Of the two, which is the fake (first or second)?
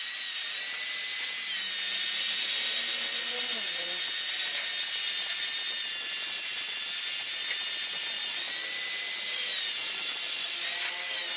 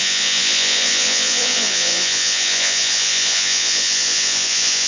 second